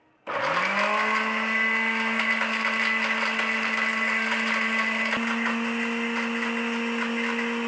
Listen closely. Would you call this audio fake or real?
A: real